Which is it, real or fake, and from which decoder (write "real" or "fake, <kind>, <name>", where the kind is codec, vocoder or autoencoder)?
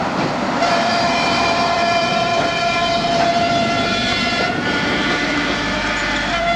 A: fake, vocoder, BigVGAN v2